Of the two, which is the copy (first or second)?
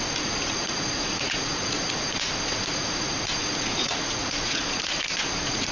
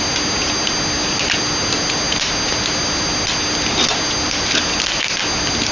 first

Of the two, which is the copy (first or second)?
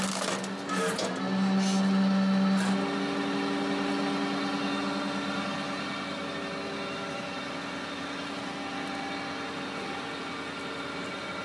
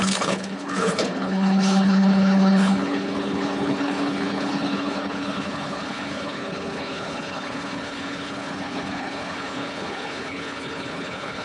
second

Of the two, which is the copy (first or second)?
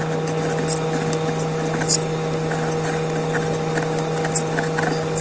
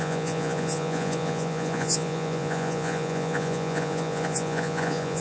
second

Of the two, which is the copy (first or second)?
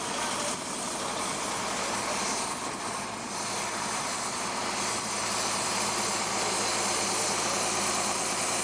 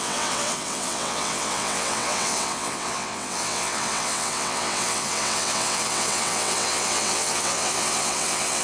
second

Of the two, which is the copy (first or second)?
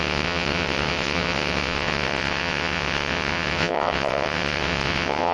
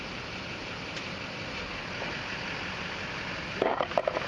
first